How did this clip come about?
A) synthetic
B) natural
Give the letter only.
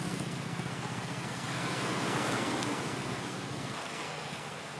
A